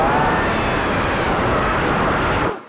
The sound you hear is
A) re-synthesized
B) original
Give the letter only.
B